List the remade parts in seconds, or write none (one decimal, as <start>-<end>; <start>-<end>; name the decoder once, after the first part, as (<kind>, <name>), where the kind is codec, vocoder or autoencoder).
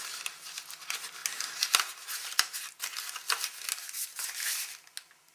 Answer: none